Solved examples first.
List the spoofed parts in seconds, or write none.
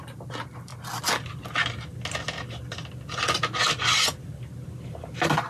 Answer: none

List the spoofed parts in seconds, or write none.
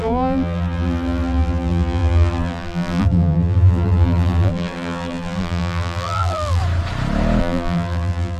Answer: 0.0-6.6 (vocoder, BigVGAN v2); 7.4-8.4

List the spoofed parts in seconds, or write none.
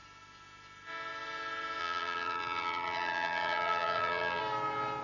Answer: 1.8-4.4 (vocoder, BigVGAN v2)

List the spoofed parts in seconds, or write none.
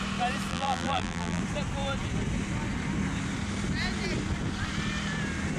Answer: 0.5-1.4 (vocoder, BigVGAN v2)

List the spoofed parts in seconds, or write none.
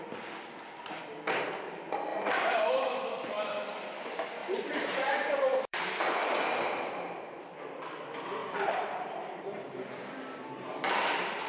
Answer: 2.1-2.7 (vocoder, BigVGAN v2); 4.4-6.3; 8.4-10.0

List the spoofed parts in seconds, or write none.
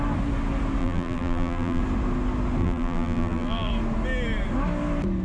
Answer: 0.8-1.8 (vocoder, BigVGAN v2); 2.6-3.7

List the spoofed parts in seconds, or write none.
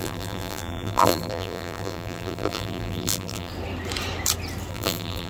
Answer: 0.0-3.5 (vocoder, BigVGAN v2); 4.7-5.3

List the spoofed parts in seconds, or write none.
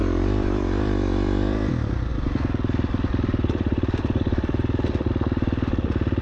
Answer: 0.0-1.7 (vocoder, BigVGAN v2); 2.1-5.1